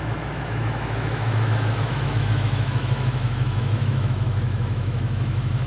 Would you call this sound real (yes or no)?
no